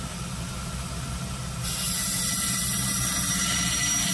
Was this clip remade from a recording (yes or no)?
no